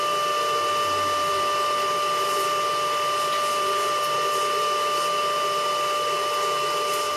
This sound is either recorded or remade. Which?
recorded